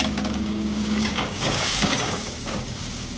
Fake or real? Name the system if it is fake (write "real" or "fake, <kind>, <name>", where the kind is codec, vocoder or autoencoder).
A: fake, codec, DAC